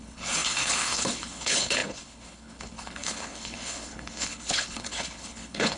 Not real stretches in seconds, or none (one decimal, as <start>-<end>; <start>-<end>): 0.0-5.8

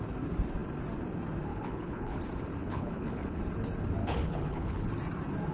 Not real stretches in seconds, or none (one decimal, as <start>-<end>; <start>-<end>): 1.5-2.2; 2.6-3.4; 4.0-4.9

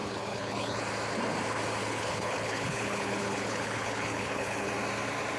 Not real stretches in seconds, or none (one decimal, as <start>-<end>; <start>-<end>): 0.0-0.8; 1.8-4.7

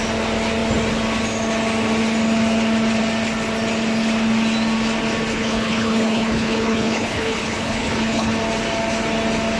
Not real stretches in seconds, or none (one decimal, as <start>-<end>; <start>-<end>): 5.3-8.3